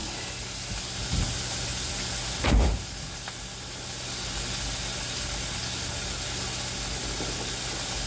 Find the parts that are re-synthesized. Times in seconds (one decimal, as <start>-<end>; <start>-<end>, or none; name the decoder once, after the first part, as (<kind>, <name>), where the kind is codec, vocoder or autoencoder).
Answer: none